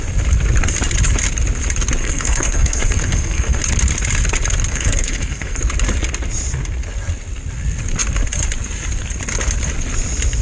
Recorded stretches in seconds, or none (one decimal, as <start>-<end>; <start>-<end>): 0.0-2.0; 3.6-4.7; 5.6-10.4